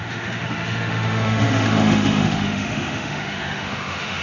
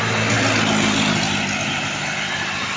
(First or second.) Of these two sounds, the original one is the second